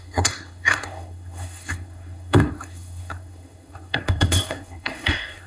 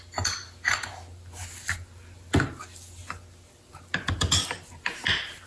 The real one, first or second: second